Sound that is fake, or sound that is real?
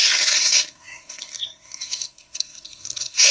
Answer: fake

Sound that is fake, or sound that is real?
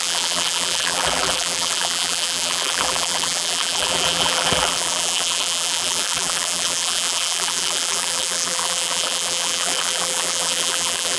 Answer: fake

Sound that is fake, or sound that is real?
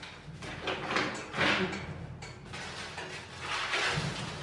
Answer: real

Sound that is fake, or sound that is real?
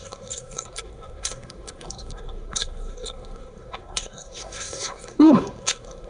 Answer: fake